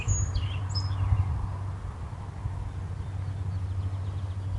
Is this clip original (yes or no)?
yes